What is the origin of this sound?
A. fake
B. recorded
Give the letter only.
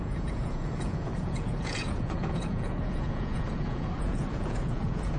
A